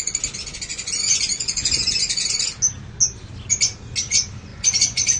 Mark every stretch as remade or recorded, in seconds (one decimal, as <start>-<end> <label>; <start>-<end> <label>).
0.0-0.7 recorded; 0.7-2.1 remade; 2.1-4.5 recorded; 4.5-5.2 remade